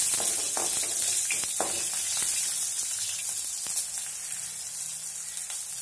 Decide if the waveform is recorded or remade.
recorded